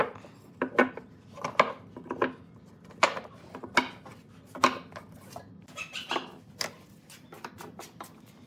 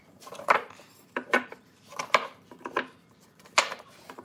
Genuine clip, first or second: first